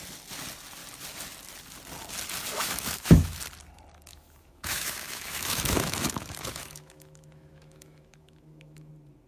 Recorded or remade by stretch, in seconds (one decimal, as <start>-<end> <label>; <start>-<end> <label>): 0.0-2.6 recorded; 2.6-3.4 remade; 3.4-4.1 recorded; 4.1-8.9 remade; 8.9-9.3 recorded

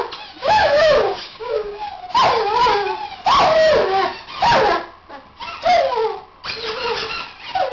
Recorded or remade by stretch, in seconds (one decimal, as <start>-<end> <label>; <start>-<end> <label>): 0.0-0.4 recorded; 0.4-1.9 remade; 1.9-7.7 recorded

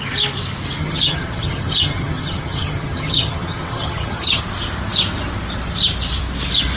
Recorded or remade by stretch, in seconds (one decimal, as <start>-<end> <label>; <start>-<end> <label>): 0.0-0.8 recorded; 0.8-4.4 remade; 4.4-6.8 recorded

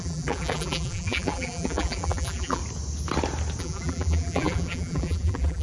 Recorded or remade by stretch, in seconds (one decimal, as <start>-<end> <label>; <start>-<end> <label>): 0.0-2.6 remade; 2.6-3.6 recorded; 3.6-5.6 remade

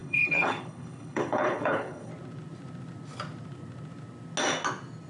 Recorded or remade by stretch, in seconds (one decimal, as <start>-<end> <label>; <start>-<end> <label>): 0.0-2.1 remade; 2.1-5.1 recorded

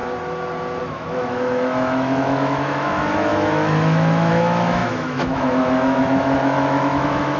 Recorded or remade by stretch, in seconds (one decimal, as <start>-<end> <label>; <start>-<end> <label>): 0.0-0.8 recorded; 0.8-7.4 remade